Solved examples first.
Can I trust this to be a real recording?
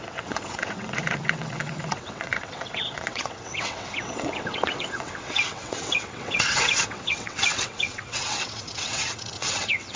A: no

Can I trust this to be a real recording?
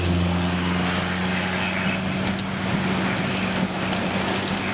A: yes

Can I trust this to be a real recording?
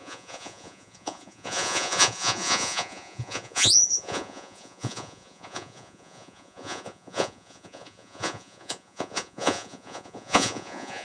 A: no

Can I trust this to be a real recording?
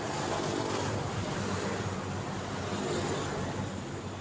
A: yes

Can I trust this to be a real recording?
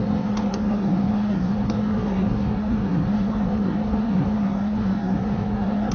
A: no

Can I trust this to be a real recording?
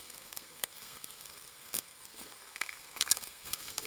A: no